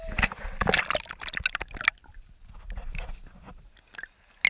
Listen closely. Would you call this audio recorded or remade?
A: recorded